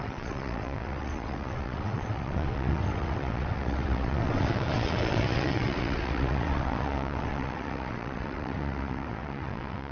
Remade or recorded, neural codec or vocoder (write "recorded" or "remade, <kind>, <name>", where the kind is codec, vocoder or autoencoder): remade, vocoder, WaveNeXt